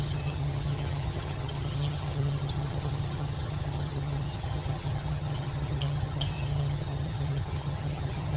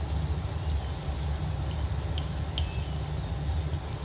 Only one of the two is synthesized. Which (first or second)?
first